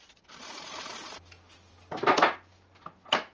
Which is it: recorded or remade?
recorded